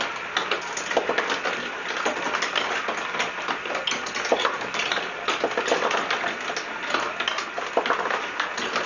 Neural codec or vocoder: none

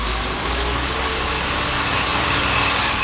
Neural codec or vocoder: codec, DAC